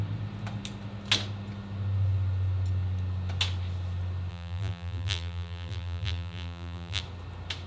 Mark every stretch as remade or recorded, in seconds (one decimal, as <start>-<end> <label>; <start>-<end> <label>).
0.0-4.3 recorded; 4.3-7.0 remade; 7.0-7.7 recorded